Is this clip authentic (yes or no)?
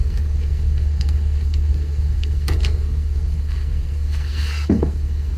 no